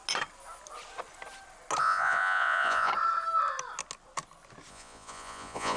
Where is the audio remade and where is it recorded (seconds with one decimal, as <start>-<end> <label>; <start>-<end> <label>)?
0.0-1.8 recorded; 1.8-2.9 remade; 2.9-4.7 recorded; 4.7-5.8 remade